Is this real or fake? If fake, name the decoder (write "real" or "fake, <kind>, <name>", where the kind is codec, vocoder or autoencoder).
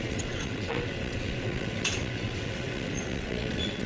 fake, vocoder, WaveNeXt